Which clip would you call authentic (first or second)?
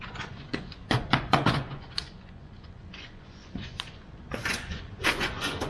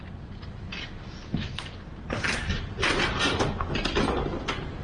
second